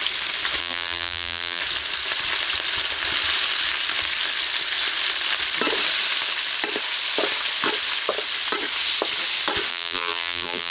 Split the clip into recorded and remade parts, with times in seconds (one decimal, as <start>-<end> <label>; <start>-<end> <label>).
0.0-0.6 recorded; 0.6-1.6 remade; 1.6-9.7 recorded; 9.7-10.7 remade

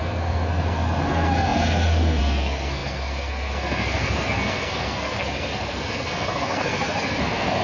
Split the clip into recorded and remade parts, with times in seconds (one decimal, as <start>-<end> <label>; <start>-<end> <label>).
0.0-7.6 remade